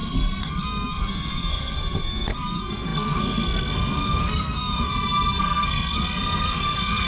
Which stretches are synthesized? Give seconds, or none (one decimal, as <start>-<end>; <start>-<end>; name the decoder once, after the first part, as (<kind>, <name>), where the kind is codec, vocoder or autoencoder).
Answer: 0.0-4.9 (codec, SNAC); 5.4-7.1